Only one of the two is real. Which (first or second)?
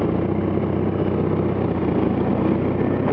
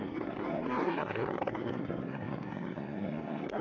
first